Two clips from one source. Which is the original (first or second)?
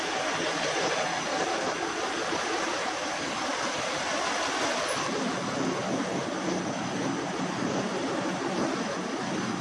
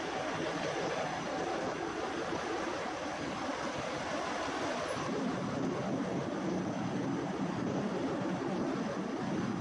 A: first